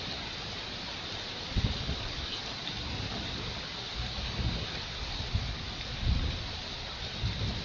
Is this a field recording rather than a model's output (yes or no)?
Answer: yes